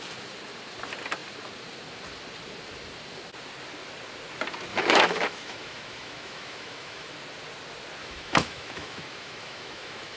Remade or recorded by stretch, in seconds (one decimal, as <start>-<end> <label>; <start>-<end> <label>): 0.0-4.7 recorded; 4.7-7.1 remade; 7.1-8.0 recorded; 8.0-10.2 remade